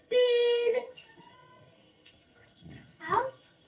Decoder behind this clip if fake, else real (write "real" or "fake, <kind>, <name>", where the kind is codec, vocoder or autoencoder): fake, codec, SNAC